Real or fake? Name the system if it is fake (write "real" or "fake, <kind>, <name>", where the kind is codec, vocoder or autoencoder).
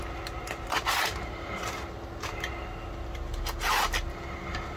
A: real